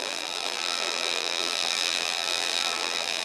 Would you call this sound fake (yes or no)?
yes